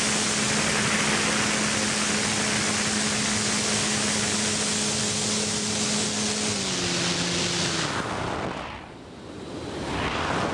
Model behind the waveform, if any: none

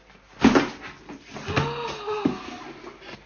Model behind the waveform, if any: none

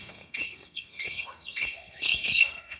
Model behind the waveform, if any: codec, SNAC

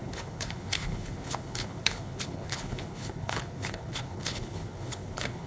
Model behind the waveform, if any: codec, HILCodec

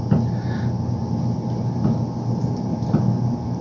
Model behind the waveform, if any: none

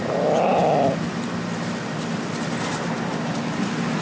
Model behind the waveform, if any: none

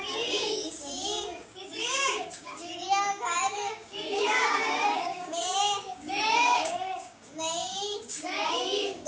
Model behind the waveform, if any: codec, DAC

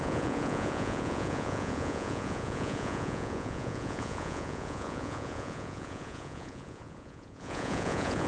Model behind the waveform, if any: vocoder, Vocos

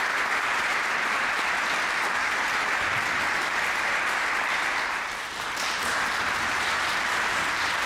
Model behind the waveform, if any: vocoder, BigVGAN v2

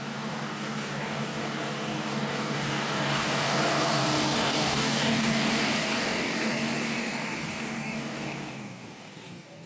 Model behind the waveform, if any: codec, DAC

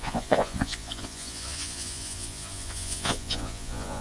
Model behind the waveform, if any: vocoder, Vocos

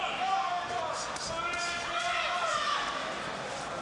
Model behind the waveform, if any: none